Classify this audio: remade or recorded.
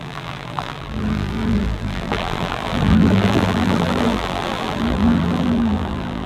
remade